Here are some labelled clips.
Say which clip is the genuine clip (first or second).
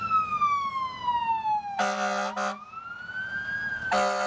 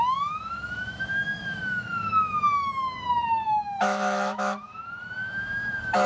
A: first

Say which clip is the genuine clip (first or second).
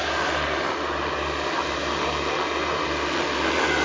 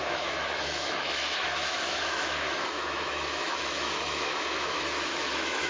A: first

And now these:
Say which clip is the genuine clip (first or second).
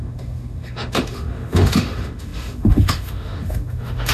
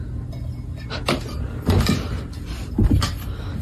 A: second